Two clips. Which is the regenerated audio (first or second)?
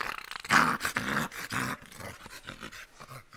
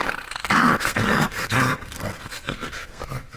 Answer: second